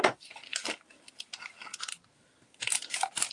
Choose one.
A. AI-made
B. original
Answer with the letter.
B